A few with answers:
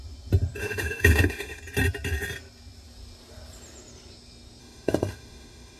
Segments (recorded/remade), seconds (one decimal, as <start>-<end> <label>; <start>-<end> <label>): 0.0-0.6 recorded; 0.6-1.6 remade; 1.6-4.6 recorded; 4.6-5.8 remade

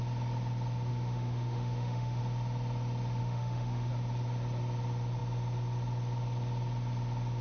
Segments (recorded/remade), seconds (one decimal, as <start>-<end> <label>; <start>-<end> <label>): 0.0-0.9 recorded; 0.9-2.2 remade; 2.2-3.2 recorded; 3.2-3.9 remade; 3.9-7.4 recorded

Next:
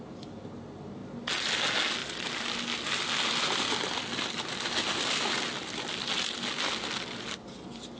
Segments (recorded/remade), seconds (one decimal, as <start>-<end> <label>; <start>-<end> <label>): 0.0-8.0 recorded